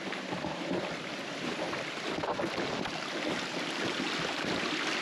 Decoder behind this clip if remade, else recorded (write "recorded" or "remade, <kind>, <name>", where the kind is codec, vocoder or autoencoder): recorded